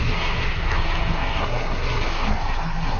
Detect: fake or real fake